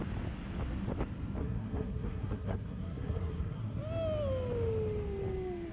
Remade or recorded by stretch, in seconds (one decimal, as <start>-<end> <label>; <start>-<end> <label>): 0.0-1.4 recorded; 1.4-3.8 remade; 3.8-5.7 recorded